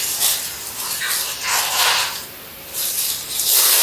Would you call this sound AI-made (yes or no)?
no